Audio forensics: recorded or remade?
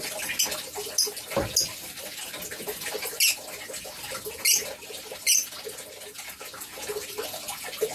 recorded